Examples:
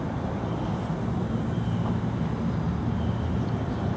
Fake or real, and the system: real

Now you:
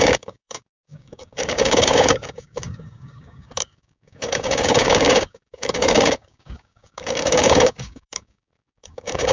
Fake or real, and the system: fake, codec, DAC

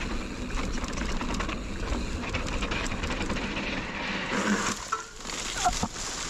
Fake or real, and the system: real